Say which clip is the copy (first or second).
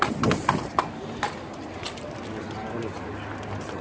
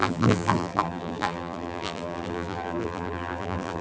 second